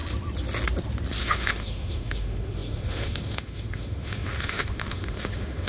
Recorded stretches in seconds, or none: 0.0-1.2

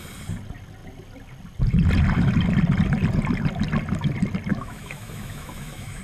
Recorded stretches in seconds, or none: 0.0-4.5